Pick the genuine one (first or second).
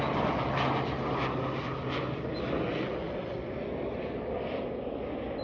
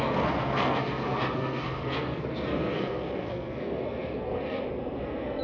first